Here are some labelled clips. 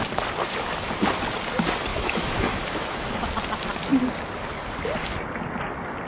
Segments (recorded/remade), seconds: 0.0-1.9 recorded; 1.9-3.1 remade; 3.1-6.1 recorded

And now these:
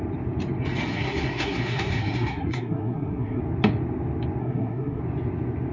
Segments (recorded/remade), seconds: 0.0-0.9 recorded; 0.9-3.4 remade; 3.4-4.4 recorded; 4.4-5.0 remade; 5.0-5.7 recorded

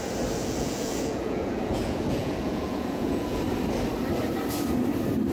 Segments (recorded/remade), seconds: 0.0-0.4 recorded; 0.4-3.4 remade; 3.4-5.3 recorded

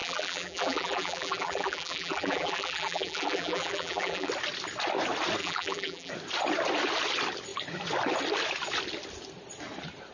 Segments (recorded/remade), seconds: 0.0-4.3 remade; 4.3-5.4 recorded; 5.4-6.1 remade; 6.1-10.1 recorded

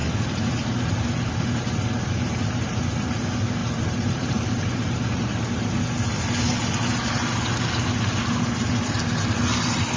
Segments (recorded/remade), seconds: 0.0-3.6 recorded; 3.6-5.7 remade; 5.7-10.0 recorded

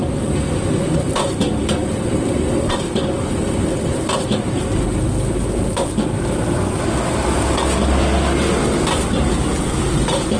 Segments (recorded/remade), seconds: 0.0-10.4 recorded

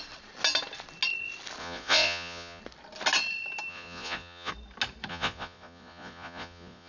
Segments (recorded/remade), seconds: 0.0-1.6 recorded; 1.6-2.6 remade; 2.6-3.7 recorded; 3.7-4.5 remade; 4.5-5.1 recorded; 5.1-6.9 remade